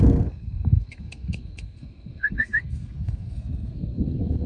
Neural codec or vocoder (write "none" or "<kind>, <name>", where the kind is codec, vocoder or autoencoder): codec, SNAC